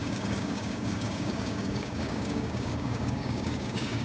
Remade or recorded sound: remade